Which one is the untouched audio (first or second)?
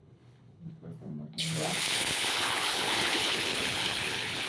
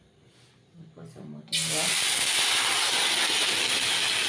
second